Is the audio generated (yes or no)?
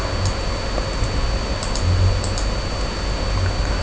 no